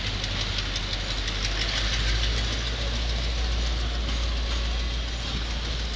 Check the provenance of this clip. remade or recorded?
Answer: recorded